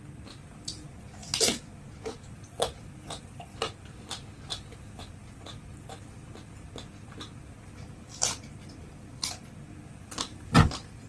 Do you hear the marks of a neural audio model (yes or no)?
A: no